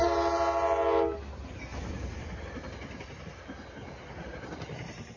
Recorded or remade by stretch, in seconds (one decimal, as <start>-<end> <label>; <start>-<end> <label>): 0.0-1.7 recorded; 1.7-3.4 remade; 3.4-5.2 recorded